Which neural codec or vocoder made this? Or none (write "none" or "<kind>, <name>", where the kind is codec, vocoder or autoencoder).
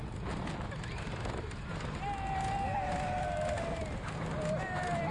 none